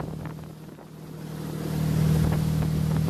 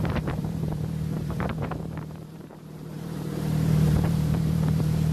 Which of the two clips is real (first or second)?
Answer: first